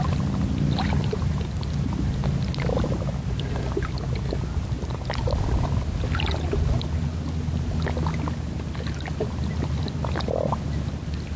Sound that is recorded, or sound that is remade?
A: recorded